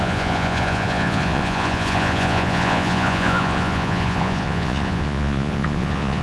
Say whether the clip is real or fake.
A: fake